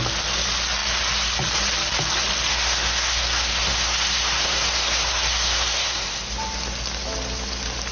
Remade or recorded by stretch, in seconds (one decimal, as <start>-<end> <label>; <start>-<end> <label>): 0.0-2.5 recorded; 2.5-6.2 remade; 6.2-7.9 recorded